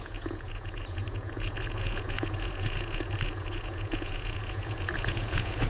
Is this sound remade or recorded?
remade